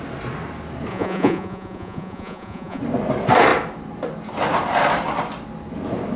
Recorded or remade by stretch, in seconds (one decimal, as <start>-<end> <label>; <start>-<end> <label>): 0.0-0.9 recorded; 0.9-2.8 remade; 2.8-6.2 recorded